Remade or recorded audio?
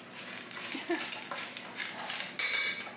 recorded